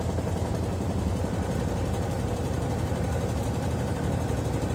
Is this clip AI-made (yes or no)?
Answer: yes